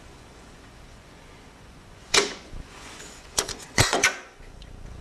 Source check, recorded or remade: remade